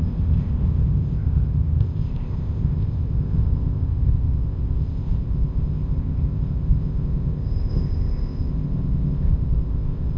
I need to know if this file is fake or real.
fake